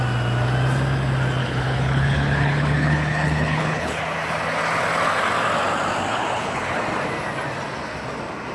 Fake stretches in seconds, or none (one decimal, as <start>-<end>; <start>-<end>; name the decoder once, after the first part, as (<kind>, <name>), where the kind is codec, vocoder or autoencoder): 1.4-4.0 (codec, HILCodec); 6.1-6.8